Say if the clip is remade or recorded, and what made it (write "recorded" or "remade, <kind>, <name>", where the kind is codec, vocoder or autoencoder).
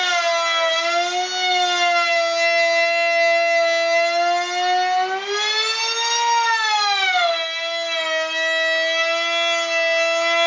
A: recorded